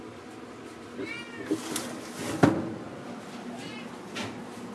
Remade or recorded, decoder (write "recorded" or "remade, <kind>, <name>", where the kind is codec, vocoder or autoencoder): recorded